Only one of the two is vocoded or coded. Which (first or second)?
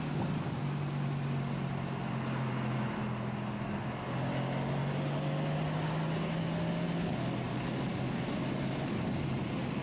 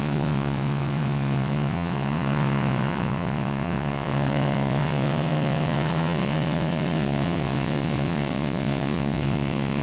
second